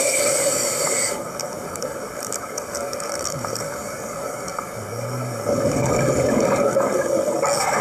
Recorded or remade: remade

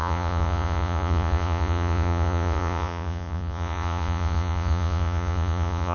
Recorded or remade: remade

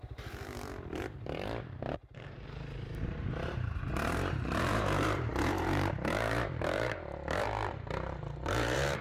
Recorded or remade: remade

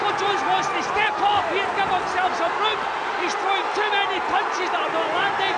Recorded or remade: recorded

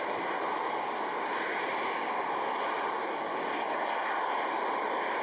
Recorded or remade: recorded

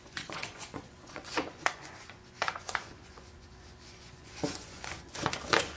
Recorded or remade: remade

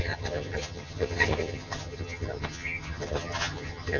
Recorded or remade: remade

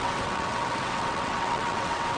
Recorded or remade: remade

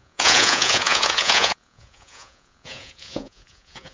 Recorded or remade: remade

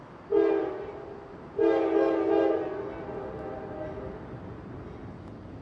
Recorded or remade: recorded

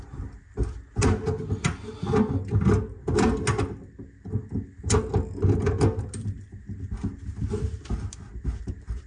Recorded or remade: recorded